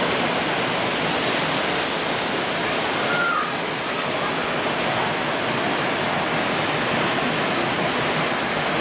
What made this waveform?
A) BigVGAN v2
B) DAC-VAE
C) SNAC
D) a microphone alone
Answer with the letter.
D